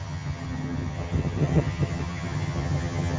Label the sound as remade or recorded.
remade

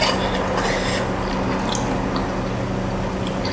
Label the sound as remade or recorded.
recorded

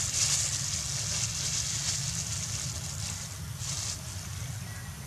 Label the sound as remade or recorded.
recorded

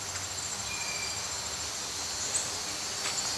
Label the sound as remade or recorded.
recorded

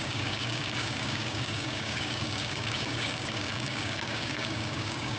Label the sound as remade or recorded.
remade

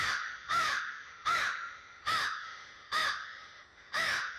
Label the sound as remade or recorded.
remade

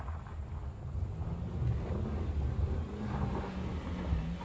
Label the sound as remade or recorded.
recorded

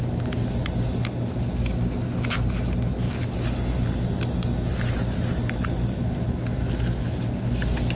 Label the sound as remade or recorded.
recorded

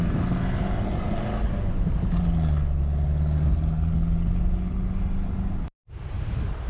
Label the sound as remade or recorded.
recorded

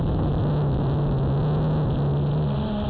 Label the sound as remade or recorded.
recorded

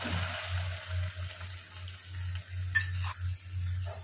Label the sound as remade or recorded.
recorded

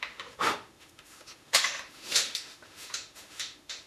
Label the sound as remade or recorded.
remade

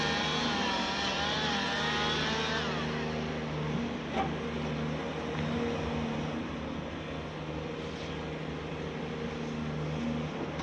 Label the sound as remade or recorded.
recorded